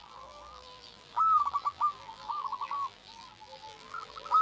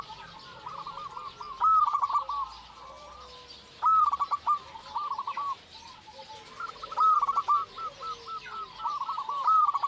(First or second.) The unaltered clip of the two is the second